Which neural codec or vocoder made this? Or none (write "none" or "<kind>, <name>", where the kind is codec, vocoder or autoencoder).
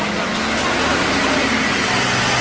none